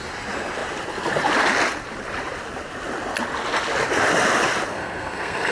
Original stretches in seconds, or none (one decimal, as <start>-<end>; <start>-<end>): 0.0-4.7